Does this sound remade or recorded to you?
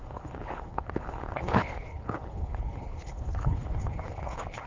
remade